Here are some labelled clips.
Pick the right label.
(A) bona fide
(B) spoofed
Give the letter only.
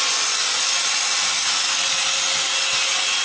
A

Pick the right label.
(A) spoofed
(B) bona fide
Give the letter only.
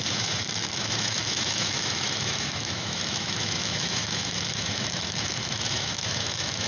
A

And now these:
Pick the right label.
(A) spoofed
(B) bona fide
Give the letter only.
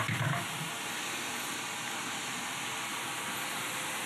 B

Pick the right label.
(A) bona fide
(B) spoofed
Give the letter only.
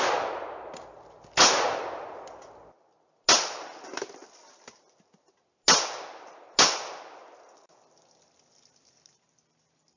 A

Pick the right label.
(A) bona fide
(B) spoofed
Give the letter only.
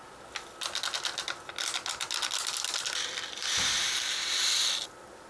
A